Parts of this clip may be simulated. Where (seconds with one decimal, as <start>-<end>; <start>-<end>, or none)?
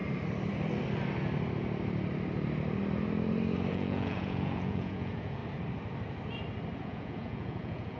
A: 3.7-5.4; 6.8-8.0